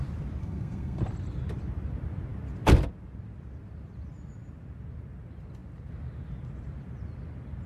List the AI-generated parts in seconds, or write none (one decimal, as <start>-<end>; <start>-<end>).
0.4-1.0